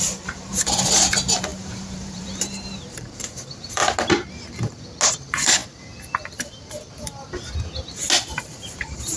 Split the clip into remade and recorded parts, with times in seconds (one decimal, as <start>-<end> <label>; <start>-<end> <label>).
0.0-3.8 remade; 3.8-5.1 recorded; 5.1-5.6 remade; 5.6-8.6 recorded; 8.6-9.2 remade